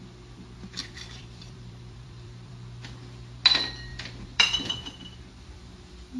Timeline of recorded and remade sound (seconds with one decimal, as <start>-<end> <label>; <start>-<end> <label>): 0.0-0.8 recorded; 0.8-2.5 remade; 2.5-3.9 recorded; 3.9-4.7 remade; 4.7-6.2 recorded